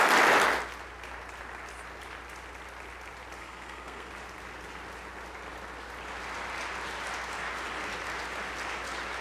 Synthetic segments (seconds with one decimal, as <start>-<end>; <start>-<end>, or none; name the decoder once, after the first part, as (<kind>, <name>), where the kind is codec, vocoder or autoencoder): 3.4-4.1 (codec, SNAC)